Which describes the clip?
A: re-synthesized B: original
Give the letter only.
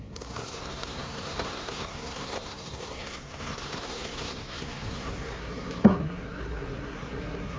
A